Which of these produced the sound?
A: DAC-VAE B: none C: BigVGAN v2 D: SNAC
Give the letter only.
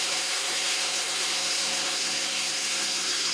D